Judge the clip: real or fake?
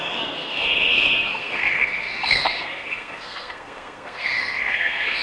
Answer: fake